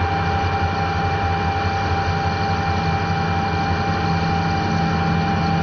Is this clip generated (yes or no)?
no